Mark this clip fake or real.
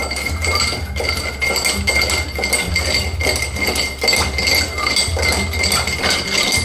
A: real